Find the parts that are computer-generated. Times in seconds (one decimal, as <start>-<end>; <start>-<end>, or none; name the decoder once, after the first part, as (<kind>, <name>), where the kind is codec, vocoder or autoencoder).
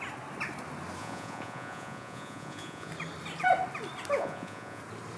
1.0-2.9 (vocoder, Vocos); 4.2-4.8